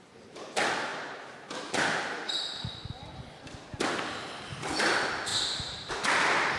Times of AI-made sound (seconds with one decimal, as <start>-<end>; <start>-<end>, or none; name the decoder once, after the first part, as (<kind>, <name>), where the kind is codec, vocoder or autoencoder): 5.3-5.9 (vocoder, BigVGAN v2)